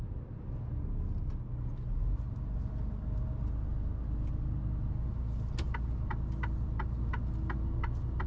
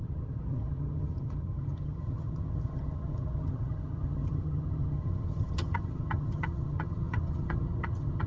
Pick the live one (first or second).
first